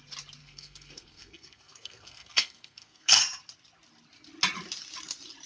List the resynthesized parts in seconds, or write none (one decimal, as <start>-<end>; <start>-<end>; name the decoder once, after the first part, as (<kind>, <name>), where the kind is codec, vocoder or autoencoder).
0.4-3.2 (codec, SNAC)